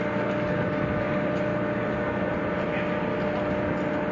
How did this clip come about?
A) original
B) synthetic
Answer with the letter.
A